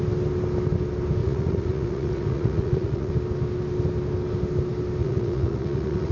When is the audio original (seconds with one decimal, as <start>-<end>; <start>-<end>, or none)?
0.0-1.2; 3.1-5.0